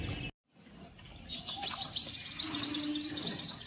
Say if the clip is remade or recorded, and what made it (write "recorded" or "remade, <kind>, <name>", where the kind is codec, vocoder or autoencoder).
recorded